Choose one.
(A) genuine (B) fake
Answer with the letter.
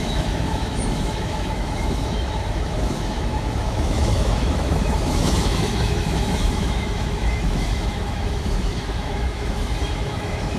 B